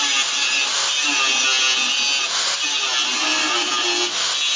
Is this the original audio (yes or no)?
yes